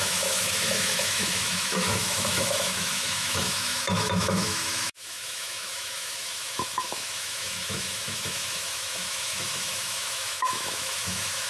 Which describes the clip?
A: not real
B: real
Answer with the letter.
A